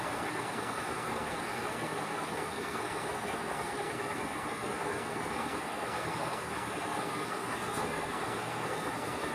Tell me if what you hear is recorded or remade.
remade